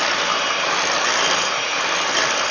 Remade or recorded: recorded